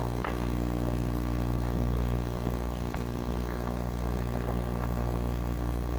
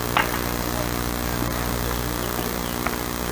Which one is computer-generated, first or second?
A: first